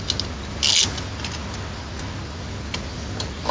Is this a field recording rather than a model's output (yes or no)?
yes